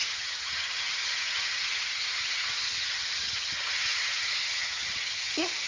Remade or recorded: remade